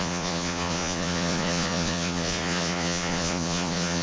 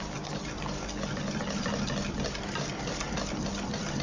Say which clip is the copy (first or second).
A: first